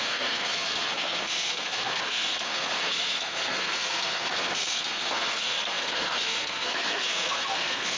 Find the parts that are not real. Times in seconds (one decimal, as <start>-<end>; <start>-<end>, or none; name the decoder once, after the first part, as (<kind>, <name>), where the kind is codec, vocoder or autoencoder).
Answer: 0.0-8.0 (codec, SNAC)